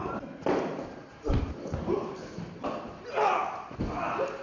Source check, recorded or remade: recorded